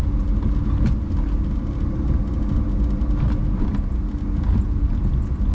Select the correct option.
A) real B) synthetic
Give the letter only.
A